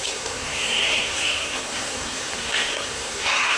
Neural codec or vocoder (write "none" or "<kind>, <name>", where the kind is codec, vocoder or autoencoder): codec, SNAC